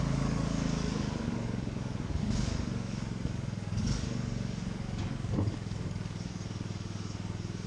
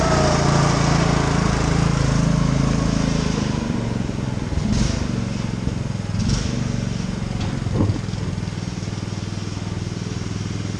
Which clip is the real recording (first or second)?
second